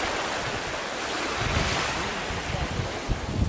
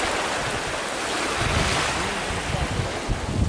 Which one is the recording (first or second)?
second